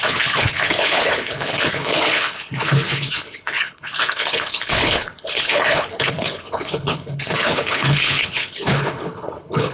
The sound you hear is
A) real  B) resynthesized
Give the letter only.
B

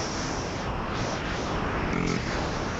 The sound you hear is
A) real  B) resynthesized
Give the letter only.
A